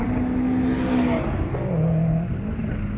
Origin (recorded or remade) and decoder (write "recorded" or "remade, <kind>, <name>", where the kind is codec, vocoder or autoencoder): recorded